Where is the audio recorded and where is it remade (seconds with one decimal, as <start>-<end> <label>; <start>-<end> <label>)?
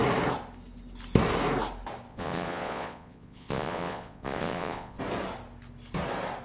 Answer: 0.0-2.1 recorded; 2.1-5.0 remade; 5.0-6.4 recorded